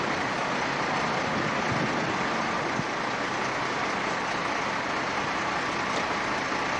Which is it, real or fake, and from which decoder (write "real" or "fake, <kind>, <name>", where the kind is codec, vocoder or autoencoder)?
real